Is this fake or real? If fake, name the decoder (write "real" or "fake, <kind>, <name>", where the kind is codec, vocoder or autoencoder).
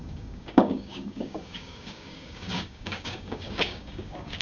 fake, codec, DAC